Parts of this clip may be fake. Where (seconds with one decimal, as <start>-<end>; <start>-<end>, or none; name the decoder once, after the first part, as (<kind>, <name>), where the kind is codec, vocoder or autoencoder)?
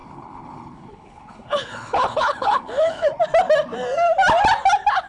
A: 0.0-3.1 (codec, HILCodec)